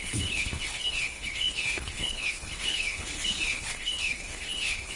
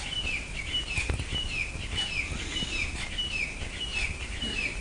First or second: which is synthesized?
first